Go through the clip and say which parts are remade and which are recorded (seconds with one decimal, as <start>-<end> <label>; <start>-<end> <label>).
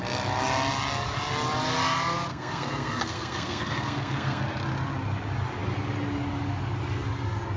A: 0.0-2.3 recorded; 2.3-4.4 remade; 4.4-7.6 recorded